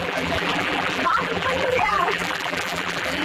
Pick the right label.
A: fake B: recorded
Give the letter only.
A